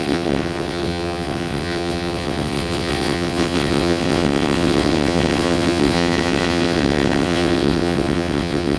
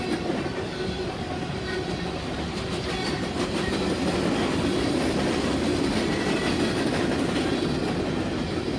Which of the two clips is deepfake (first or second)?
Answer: first